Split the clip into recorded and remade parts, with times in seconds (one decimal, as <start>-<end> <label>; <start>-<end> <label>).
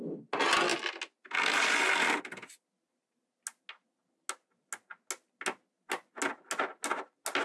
0.0-7.4 recorded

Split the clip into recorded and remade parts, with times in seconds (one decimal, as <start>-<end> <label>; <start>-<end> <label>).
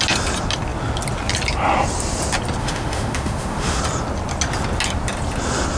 0.0-2.6 recorded; 2.6-3.8 remade; 3.8-5.8 recorded